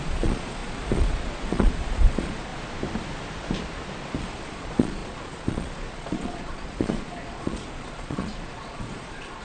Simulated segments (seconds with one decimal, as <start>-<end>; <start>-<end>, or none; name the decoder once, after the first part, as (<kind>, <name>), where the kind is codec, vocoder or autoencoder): 0.0-2.5 (vocoder, Vocos); 4.2-9.4